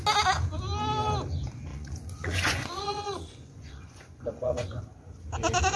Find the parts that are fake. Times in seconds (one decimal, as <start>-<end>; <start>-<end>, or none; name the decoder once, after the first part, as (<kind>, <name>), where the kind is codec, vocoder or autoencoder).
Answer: 1.7-4.8 (vocoder, Vocos)